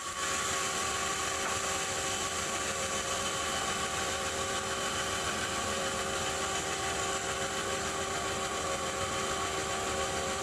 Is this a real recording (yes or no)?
yes